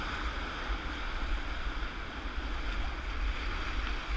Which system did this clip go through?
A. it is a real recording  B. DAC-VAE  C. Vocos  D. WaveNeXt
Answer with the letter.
A